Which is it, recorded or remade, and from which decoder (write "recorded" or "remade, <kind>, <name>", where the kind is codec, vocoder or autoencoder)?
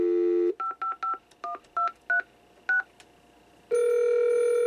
recorded